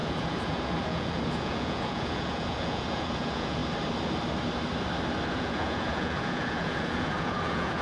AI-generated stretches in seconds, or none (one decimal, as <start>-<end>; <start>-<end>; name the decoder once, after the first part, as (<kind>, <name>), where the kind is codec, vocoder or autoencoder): 0.0-3.6 (vocoder, Vocos); 5.3-7.8